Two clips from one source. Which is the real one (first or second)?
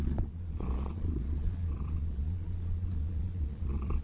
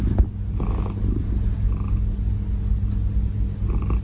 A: second